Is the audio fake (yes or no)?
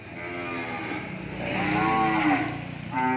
no